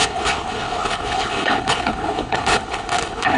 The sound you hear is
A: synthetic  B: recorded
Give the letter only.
A